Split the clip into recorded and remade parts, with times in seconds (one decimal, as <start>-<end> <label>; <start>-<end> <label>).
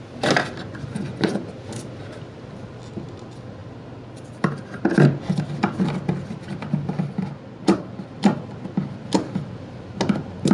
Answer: 0.0-0.6 recorded; 0.6-1.5 remade; 1.5-10.5 recorded